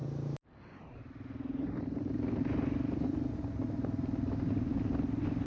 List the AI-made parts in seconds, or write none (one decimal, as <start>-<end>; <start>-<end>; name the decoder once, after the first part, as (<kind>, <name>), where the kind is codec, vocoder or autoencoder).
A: 0.0-3.3 (vocoder, BigVGAN v2)